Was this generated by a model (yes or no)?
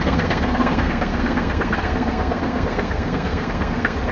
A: yes